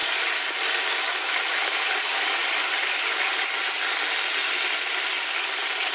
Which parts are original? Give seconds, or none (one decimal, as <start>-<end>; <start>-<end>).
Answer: 0.0-5.9